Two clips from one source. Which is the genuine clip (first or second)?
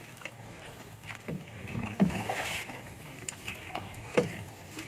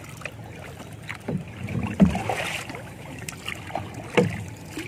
second